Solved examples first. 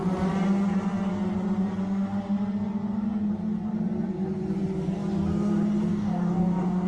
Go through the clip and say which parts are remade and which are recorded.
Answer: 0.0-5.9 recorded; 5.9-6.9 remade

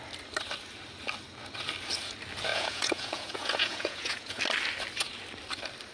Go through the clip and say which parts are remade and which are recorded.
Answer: 0.0-2.5 recorded; 2.5-4.4 remade; 4.4-5.9 recorded

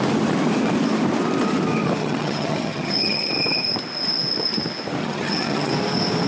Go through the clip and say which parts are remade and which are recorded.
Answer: 0.0-2.0 recorded; 2.0-3.3 remade; 3.3-5.0 recorded; 5.0-5.7 remade; 5.7-6.3 recorded

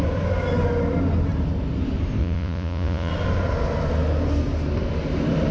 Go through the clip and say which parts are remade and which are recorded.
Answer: 0.0-2.2 recorded; 2.2-3.1 remade; 3.1-5.5 recorded

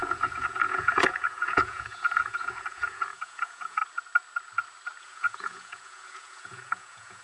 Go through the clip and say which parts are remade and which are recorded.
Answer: 0.0-3.8 remade; 3.8-5.0 recorded; 5.0-7.2 remade

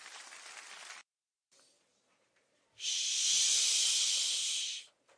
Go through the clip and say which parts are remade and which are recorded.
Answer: 0.0-1.0 recorded; 1.0-4.1 remade; 4.1-5.2 recorded